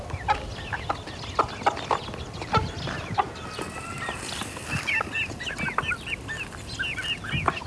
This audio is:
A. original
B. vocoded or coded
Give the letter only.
A